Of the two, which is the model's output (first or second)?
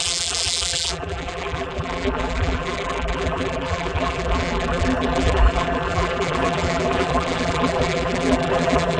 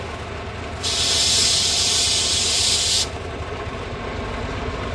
first